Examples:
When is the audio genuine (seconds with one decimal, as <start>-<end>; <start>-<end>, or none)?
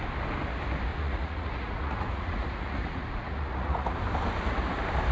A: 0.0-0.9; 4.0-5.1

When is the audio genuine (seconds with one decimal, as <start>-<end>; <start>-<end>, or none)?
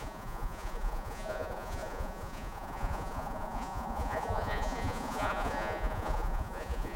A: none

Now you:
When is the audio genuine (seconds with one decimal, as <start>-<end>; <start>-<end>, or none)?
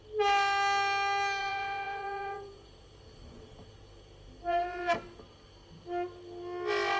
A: 0.0-1.4; 5.2-7.0